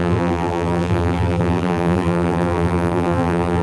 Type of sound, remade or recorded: remade